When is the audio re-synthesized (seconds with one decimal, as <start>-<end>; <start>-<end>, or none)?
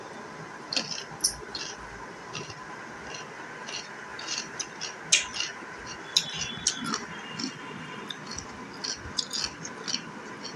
4.1-4.6